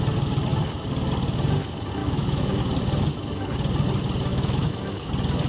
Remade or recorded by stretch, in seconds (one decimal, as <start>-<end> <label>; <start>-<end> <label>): 0.0-2.0 recorded; 2.0-2.6 remade; 2.6-4.3 recorded; 4.3-5.1 remade; 5.1-5.5 recorded